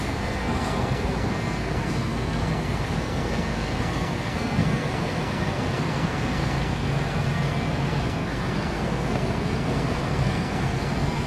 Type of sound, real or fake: fake